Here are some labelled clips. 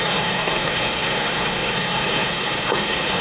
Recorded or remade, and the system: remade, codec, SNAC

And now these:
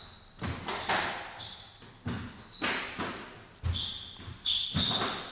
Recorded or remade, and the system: recorded